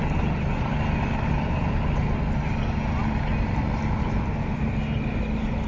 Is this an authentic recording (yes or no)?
yes